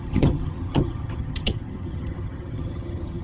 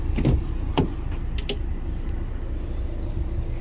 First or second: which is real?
second